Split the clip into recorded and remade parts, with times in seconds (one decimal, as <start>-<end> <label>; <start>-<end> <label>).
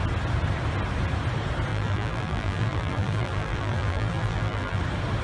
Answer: 0.0-1.7 recorded; 1.7-4.8 remade; 4.8-5.2 recorded